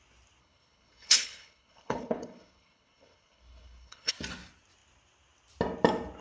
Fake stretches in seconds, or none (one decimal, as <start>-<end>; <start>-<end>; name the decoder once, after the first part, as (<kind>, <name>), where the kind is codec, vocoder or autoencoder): 0.4-4.1 (codec, HILCodec)